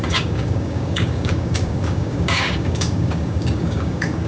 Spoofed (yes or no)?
yes